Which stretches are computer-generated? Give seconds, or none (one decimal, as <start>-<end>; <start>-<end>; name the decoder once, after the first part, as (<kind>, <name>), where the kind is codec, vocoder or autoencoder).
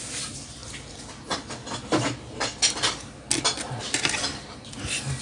none